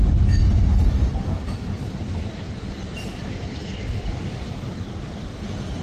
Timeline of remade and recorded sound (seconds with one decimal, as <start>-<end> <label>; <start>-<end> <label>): 0.0-3.6 recorded; 3.6-5.2 remade; 5.2-5.8 recorded